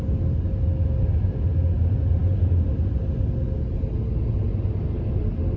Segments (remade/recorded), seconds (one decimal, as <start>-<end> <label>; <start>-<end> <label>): 0.0-5.6 recorded